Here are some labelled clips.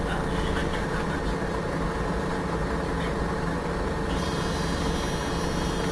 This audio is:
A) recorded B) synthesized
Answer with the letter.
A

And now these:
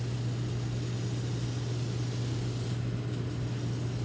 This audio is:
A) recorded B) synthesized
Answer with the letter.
A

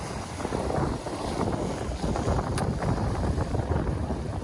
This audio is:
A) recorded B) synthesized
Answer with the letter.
A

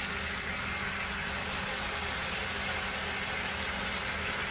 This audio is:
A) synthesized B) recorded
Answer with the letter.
B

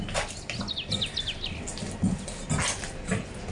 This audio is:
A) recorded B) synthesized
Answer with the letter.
A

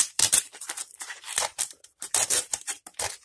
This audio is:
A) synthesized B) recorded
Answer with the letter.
A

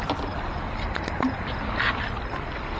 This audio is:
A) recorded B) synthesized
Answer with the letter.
A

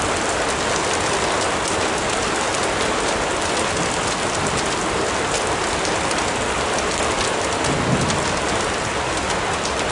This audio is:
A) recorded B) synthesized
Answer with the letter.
A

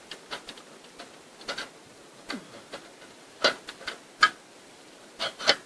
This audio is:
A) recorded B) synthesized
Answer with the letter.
A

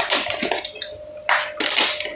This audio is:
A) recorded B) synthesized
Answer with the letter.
A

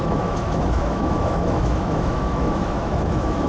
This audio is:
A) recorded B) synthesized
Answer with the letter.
B